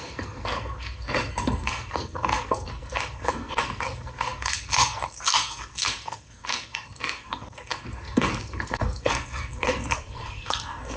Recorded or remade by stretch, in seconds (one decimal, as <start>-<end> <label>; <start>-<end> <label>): 0.0-11.0 remade